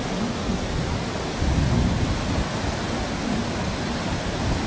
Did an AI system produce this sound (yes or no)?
no